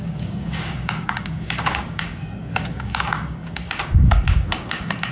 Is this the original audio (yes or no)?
no